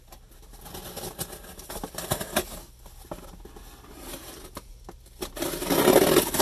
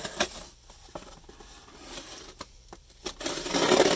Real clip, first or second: first